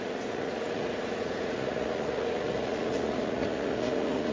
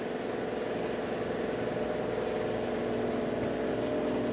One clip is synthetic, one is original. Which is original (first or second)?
second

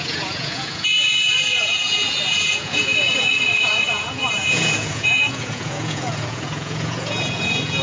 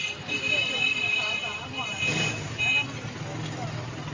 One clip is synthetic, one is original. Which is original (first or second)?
second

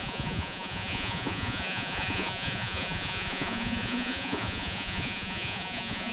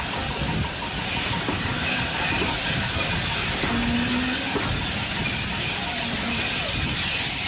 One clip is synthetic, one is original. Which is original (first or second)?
second